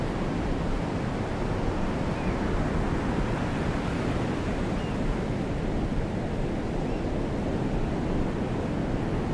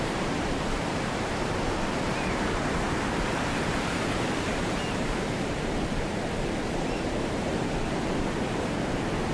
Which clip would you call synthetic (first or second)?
second